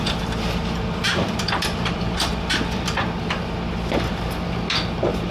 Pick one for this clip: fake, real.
fake